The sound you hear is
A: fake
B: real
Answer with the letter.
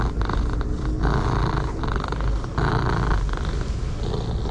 B